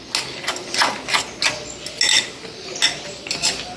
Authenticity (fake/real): real